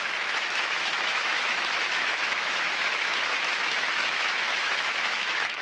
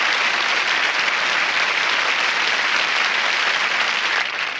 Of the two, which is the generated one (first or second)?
first